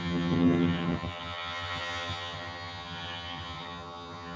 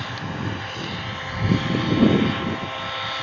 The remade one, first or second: first